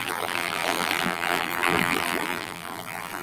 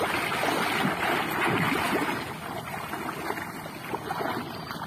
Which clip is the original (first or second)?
second